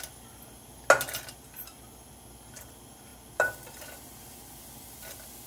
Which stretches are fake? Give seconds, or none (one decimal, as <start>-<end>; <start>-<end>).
3.1-4.2